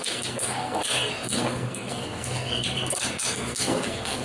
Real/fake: fake